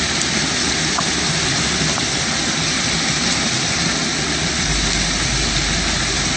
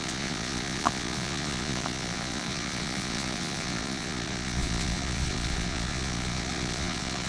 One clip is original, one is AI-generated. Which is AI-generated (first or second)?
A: second